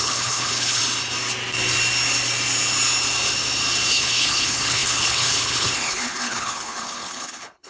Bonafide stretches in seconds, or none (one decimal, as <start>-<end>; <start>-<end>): 0.8-3.9